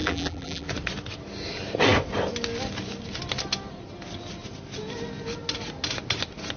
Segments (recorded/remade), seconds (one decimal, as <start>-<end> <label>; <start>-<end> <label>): 0.0-0.7 remade; 0.7-6.6 recorded